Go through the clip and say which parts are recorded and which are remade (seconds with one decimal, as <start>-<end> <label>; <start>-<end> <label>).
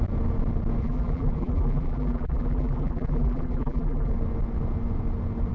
0.0-0.8 recorded; 0.8-4.1 remade; 4.1-5.5 recorded